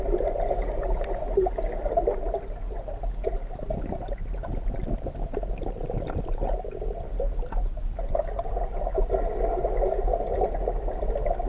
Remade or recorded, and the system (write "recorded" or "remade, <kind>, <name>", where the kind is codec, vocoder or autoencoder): recorded